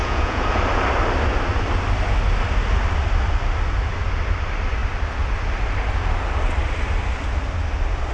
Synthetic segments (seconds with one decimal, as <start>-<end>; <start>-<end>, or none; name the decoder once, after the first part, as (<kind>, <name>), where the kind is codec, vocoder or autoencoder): 0.0-0.6 (vocoder, Vocos)